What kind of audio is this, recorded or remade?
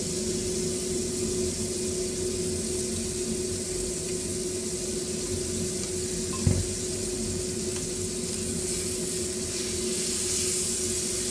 recorded